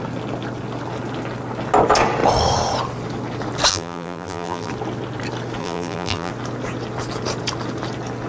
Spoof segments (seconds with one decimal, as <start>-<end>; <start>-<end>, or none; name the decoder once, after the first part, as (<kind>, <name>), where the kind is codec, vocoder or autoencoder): 3.7-4.7 (vocoder, BigVGAN v2); 5.6-6.3